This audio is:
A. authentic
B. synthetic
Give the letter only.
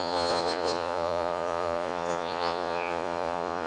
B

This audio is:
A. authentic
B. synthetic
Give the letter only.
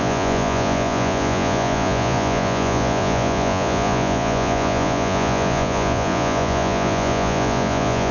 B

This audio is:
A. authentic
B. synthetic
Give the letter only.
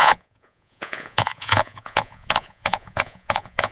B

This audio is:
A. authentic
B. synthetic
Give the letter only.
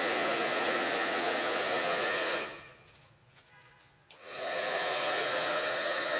B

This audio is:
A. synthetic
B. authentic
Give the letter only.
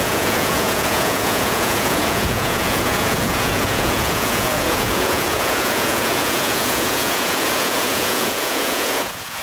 A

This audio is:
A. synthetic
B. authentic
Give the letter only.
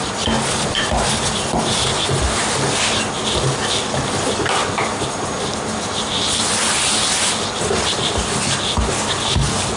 B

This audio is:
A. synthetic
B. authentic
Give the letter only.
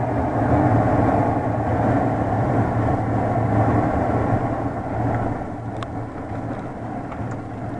B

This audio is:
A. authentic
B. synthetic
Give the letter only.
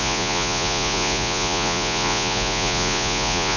B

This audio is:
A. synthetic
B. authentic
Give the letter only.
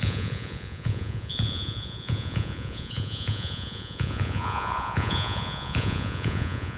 A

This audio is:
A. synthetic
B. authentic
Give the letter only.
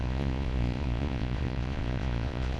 A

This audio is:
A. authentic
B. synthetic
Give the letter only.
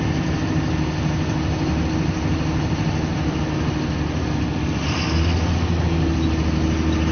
A